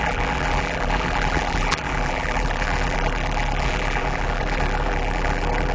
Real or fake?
fake